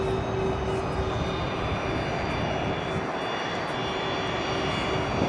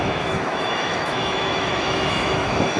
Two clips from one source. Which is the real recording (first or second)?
first